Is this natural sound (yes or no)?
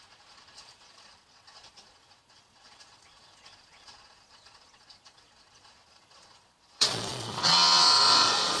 no